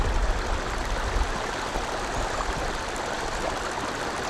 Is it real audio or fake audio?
real